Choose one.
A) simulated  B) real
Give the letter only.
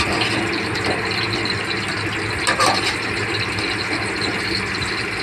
B